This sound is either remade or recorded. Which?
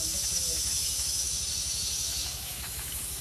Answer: remade